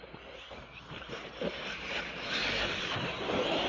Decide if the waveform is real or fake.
real